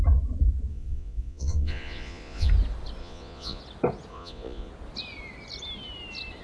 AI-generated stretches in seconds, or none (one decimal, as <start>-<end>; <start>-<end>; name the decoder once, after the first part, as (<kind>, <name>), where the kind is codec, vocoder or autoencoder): 0.7-2.5 (vocoder, Vocos); 3.0-3.6; 4.1-4.7